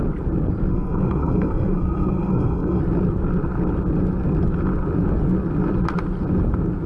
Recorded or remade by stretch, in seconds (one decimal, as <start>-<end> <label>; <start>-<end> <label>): 0.0-0.7 recorded; 0.7-2.8 remade; 2.8-6.9 recorded